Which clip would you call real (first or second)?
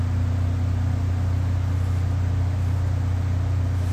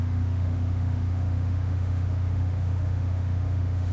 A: first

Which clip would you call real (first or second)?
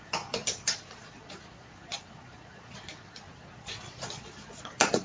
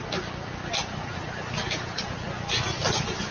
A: second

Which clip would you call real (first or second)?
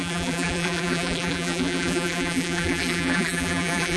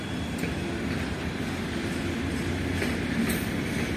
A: second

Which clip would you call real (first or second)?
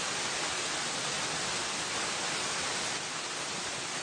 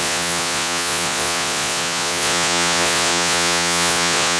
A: first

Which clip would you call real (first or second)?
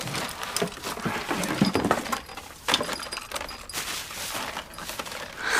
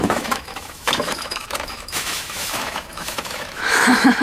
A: first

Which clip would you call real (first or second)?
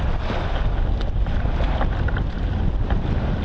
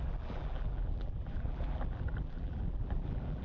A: first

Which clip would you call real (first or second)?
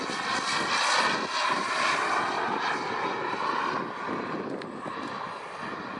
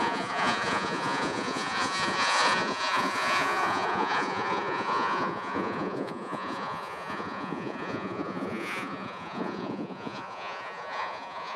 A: first